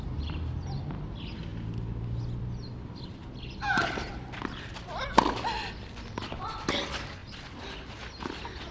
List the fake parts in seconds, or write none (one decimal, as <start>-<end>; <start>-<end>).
none